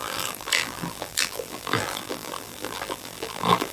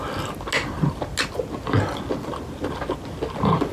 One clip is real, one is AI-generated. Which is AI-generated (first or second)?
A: first